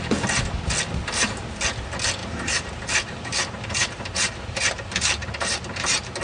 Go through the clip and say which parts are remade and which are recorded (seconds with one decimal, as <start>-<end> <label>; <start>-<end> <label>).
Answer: 0.0-1.0 recorded; 1.0-1.6 remade; 1.6-2.2 recorded; 2.2-6.2 remade